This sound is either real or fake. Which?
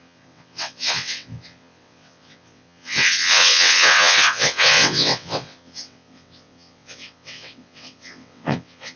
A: fake